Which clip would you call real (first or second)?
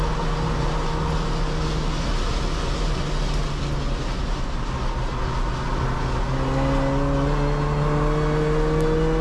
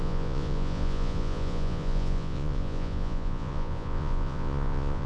first